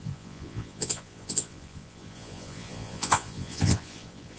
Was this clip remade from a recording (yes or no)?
yes